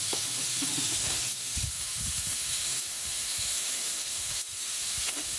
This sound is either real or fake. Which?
fake